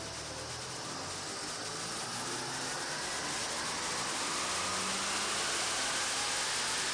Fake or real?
real